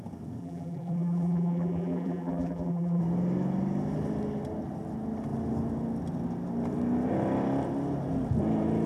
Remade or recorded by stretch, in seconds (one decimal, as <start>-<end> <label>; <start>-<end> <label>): 0.0-0.4 recorded; 0.4-3.0 remade; 3.0-8.9 recorded